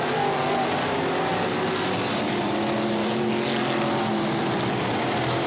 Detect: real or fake real